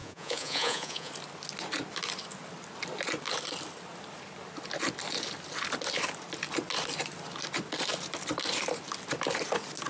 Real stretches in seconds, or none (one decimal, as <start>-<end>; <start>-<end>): 1.1-9.9